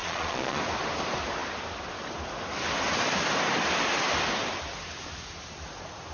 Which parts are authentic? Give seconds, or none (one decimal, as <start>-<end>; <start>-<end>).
0.6-6.1